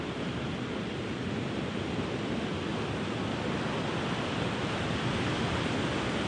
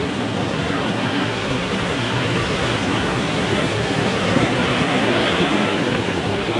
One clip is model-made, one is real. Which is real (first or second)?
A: first